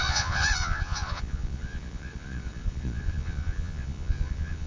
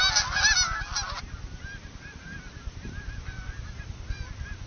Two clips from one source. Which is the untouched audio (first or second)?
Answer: second